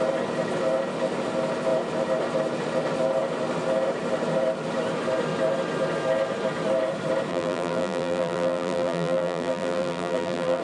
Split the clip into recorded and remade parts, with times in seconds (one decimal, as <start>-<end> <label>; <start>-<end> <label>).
0.0-7.3 recorded; 7.3-10.6 remade